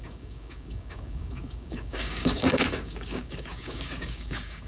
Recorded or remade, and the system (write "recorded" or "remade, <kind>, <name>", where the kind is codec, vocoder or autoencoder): remade, codec, DAC